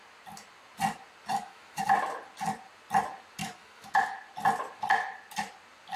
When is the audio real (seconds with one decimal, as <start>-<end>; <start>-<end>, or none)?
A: 0.0-1.3; 1.8-3.4; 4.0-6.0